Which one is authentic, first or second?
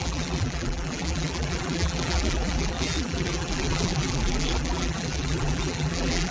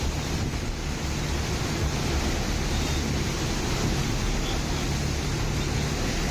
second